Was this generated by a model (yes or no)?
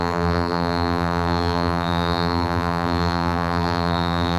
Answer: yes